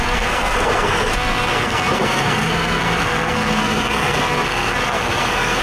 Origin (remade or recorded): remade